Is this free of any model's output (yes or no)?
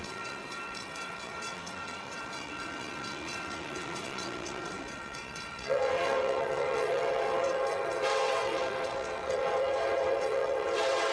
no